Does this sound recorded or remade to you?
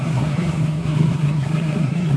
remade